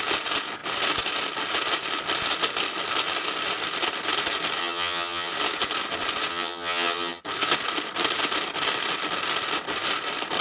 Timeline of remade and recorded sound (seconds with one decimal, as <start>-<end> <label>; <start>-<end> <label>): 0.0-4.6 recorded; 4.6-5.3 remade; 5.3-6.3 recorded; 6.3-7.2 remade; 7.2-10.4 recorded